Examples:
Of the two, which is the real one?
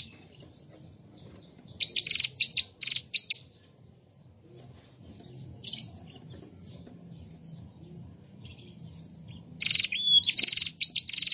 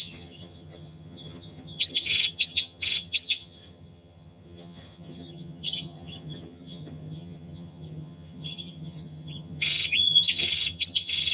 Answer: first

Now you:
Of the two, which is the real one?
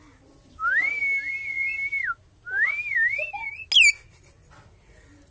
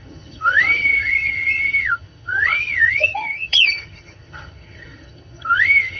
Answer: first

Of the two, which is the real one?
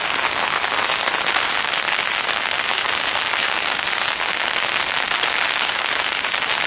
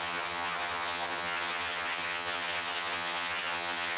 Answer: first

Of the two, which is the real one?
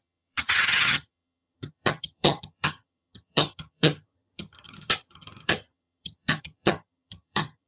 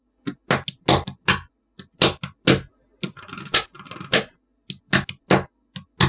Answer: second